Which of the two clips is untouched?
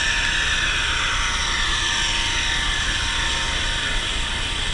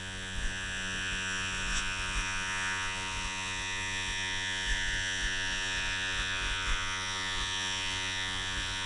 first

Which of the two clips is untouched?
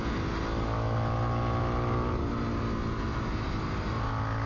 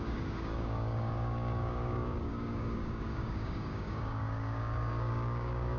first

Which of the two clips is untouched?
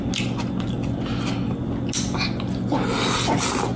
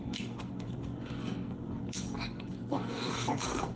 first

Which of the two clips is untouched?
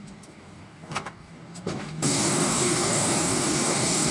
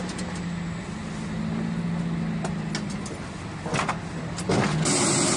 second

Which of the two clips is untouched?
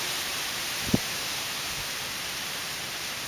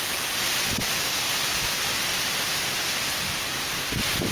second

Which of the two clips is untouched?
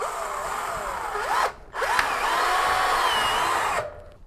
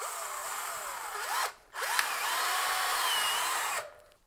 first